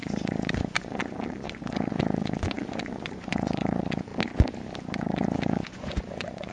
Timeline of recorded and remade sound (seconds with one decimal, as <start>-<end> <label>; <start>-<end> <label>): 0.0-4.1 remade; 4.1-4.8 recorded; 4.8-6.5 remade